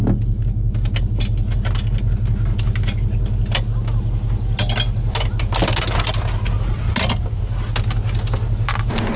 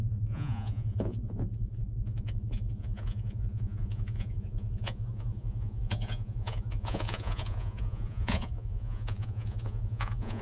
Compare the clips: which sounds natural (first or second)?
first